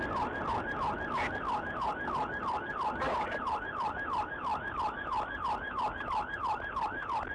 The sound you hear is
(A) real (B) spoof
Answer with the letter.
A